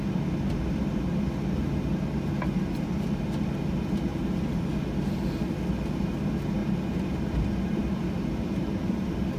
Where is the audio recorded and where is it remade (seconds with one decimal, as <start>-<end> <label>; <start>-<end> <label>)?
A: 0.0-4.1 recorded; 4.1-4.6 remade; 4.6-6.6 recorded; 6.6-9.4 remade